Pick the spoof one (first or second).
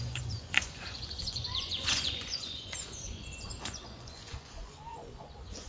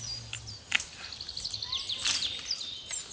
first